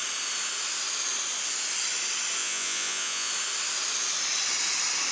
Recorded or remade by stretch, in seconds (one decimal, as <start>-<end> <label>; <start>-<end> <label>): 0.0-2.4 recorded; 2.4-3.3 remade; 3.3-5.1 recorded